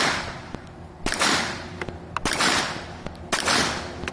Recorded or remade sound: recorded